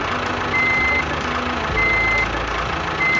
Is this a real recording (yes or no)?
yes